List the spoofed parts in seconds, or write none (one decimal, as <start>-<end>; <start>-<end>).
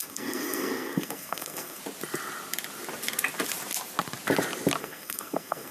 0.0-1.8; 4.8-5.7